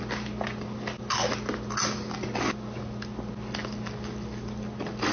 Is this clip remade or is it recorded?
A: recorded